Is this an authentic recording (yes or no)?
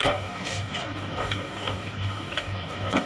no